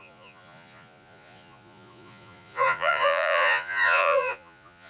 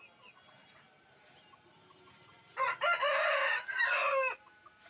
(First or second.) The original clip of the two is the second